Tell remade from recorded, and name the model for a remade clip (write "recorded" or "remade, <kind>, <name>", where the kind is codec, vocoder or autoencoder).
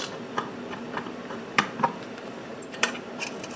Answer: remade, vocoder, BigVGAN v2